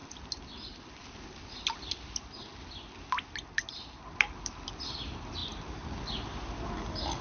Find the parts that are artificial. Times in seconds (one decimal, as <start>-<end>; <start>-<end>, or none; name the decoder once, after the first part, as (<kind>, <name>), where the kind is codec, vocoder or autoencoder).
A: none